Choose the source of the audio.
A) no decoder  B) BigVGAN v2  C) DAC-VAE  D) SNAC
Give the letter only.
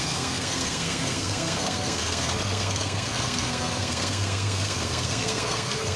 D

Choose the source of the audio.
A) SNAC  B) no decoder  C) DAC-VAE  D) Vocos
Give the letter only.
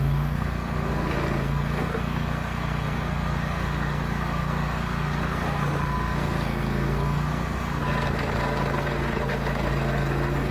A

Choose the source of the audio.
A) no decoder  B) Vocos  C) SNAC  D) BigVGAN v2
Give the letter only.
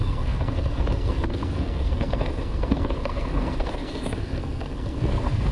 C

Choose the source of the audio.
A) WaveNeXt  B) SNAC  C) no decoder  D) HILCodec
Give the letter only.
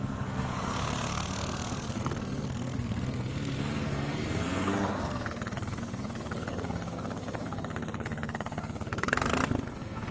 B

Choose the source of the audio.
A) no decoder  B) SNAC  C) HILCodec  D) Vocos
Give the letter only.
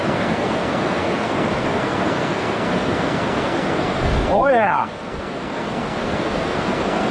B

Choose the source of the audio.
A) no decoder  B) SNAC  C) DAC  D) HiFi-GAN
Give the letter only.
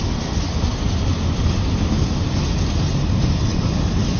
A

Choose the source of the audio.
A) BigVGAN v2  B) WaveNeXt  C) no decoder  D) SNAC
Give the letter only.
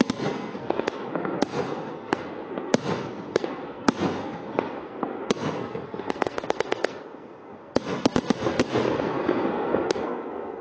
D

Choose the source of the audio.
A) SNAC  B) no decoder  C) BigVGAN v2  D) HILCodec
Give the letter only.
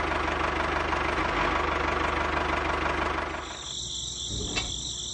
B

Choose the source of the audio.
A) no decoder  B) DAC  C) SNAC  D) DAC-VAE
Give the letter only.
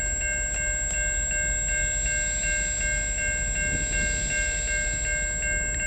A